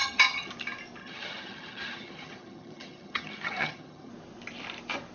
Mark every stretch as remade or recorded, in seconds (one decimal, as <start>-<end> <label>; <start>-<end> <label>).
0.0-0.5 remade; 0.5-1.0 recorded; 1.0-4.1 remade; 4.1-5.1 recorded